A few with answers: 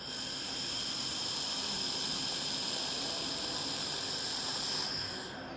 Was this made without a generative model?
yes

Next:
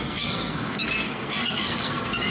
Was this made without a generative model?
no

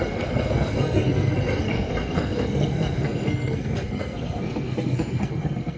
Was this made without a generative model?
no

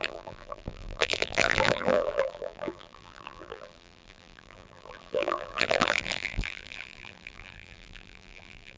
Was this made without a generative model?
no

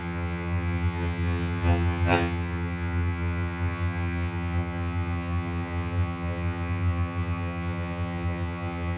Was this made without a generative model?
no